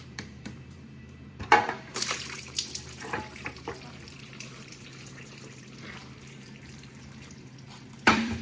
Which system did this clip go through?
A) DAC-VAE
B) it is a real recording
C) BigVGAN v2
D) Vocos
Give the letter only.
C